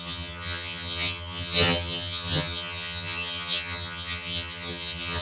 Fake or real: fake